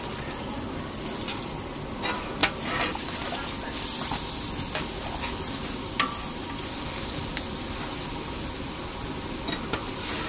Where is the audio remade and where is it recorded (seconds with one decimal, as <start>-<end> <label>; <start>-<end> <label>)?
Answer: 0.0-10.3 recorded